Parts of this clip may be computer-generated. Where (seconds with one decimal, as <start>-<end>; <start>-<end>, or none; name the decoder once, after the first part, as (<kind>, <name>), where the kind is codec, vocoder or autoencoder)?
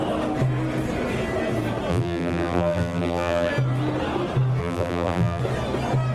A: 1.9-3.5 (vocoder, BigVGAN v2); 4.6-5.4